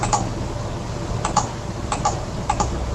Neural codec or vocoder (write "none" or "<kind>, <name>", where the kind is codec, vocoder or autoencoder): none